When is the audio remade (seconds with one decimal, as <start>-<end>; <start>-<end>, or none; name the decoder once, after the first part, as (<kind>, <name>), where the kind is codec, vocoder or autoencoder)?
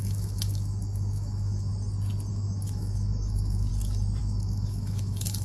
0.0-1.7 (autoencoder, DAC-VAE); 2.3-3.7; 4.2-5.4